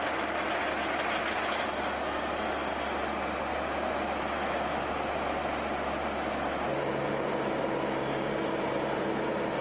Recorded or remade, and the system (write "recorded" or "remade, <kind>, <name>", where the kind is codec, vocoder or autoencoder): recorded